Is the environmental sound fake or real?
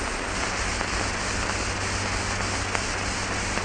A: real